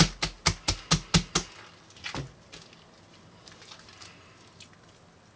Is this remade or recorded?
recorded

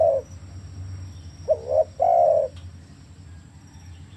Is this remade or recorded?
recorded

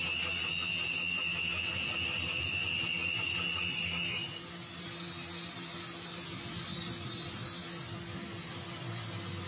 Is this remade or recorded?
recorded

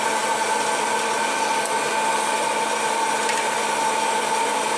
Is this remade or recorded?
recorded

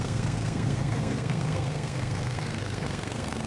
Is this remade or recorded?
remade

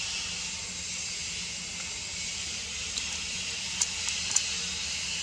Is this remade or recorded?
recorded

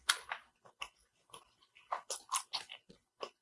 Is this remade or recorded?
recorded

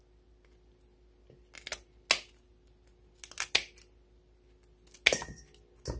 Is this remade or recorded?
recorded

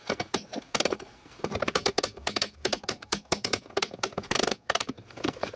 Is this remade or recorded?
remade